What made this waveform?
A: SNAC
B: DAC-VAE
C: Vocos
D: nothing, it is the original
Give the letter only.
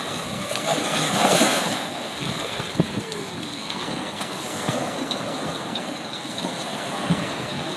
A